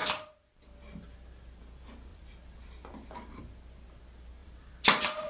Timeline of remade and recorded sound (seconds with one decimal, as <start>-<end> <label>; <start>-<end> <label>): 0.0-2.1 recorded; 2.1-3.4 remade; 3.4-4.4 recorded; 4.4-5.3 remade